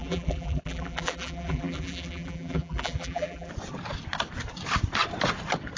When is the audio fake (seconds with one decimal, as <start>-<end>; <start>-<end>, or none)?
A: 0.0-3.5